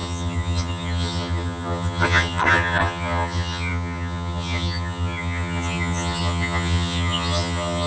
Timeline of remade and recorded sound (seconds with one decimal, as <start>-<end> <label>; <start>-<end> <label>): 0.0-7.9 remade